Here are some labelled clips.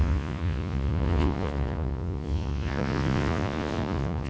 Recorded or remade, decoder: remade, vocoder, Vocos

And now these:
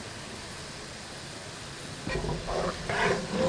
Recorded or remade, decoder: recorded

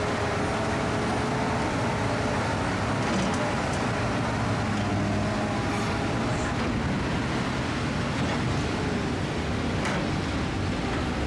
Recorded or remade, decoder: recorded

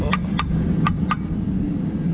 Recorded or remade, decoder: recorded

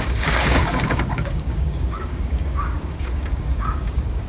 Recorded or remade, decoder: remade, codec, DAC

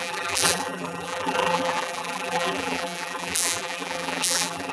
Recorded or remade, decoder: remade, vocoder, BigVGAN v2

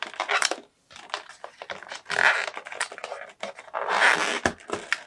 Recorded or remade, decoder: recorded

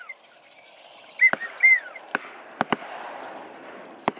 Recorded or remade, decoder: recorded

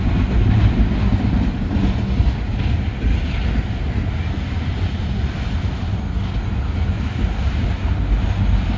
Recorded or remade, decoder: recorded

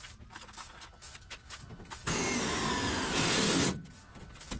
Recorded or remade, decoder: recorded